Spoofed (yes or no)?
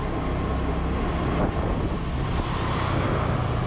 no